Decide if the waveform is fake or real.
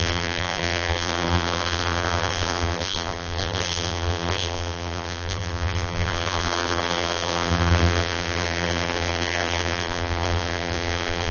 fake